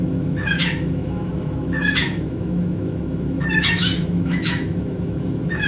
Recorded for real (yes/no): no